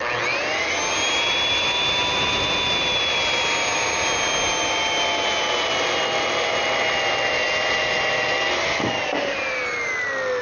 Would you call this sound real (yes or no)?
yes